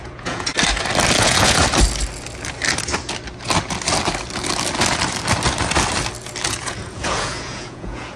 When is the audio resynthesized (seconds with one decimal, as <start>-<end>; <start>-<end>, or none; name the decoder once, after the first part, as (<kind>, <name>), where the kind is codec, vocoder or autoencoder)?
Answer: 0.0-0.5 (vocoder, Vocos); 1.2-1.6; 6.5-8.2